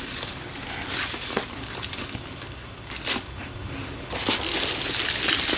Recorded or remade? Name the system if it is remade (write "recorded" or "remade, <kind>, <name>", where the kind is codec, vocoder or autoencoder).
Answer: recorded